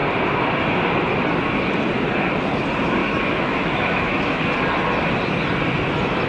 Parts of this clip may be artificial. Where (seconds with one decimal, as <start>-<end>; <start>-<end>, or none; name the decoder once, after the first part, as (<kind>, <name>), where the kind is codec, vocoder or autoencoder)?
3.0-4.4 (autoencoder, DAC-VAE)